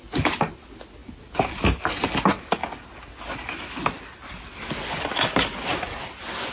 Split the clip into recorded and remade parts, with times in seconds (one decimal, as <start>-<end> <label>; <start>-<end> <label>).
0.0-6.5 recorded